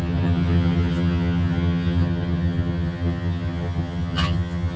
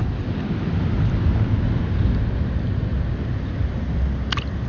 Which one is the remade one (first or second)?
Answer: first